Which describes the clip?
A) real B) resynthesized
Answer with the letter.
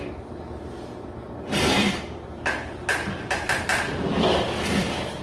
A